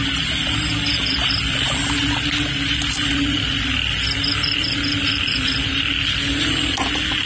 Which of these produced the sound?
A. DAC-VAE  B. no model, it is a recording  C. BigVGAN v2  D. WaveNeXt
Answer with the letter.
B